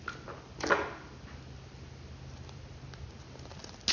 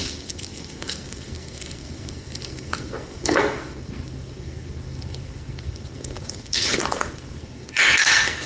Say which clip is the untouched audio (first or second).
first